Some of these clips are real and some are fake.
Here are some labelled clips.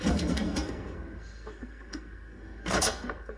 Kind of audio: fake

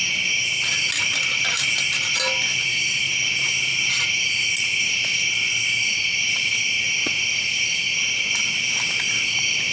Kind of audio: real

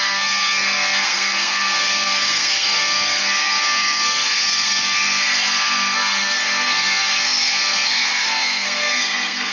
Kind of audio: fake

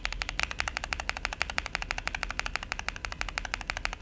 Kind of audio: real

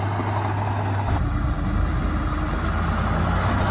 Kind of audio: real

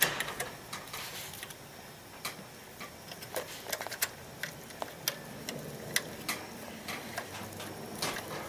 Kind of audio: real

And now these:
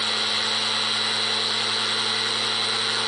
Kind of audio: real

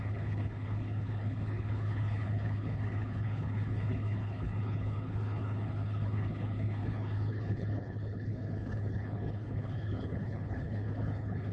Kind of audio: fake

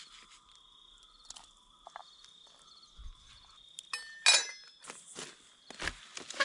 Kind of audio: real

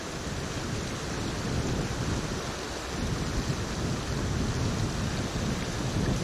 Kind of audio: real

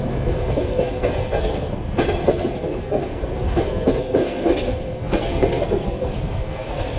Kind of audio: fake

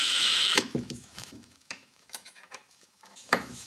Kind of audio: fake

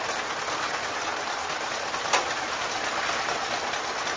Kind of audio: real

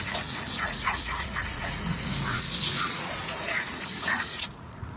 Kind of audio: fake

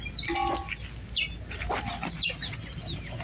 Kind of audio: real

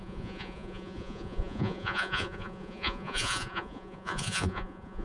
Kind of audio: fake